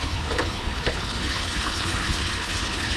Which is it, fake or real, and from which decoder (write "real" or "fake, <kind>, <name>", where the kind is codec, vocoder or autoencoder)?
fake, codec, HILCodec